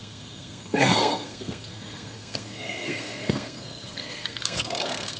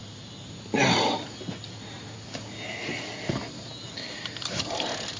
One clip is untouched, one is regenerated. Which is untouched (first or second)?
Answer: second